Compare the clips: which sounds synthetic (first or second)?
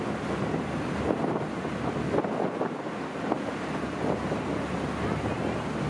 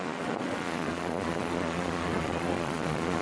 second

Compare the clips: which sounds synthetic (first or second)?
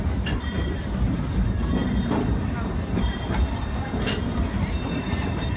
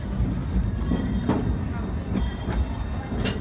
first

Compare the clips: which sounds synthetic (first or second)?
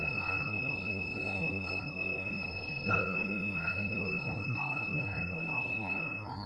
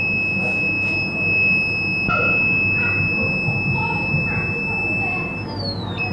first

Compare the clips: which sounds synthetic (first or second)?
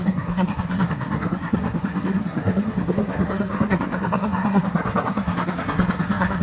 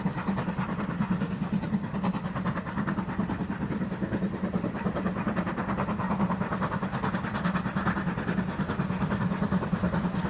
first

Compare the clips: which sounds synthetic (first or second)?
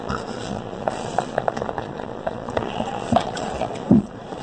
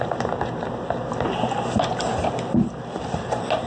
first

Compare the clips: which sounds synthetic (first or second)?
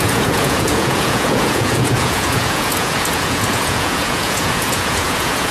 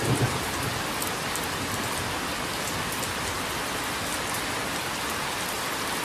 first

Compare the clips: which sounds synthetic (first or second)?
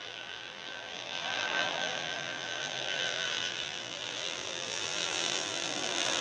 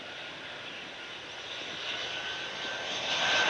first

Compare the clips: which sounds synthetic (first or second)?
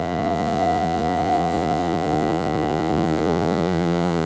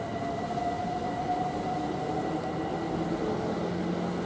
first